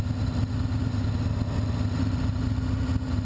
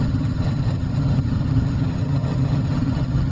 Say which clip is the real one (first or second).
first